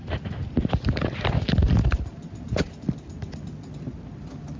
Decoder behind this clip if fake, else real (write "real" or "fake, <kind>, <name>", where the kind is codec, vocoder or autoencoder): real